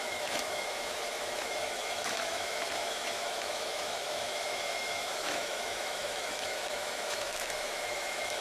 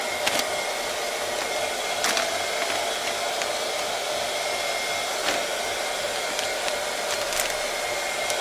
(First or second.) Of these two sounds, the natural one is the second